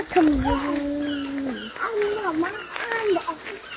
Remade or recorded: recorded